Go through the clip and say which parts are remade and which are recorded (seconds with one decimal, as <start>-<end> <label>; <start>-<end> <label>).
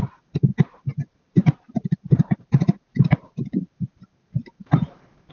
0.0-5.3 remade